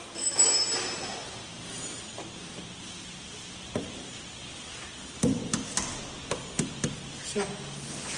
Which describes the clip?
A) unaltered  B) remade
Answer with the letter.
A